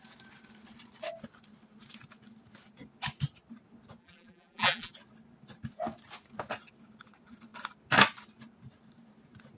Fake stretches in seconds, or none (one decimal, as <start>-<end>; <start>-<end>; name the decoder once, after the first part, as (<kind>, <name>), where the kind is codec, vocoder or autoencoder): 4.0-4.9 (vocoder, BigVGAN v2)